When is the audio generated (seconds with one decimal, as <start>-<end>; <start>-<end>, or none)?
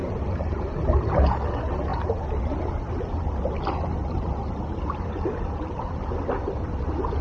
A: 0.0-0.6; 1.9-2.4; 4.0-5.6